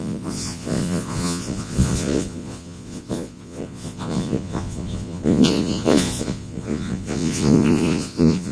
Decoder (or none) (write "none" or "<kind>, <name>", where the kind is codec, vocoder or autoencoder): vocoder, Vocos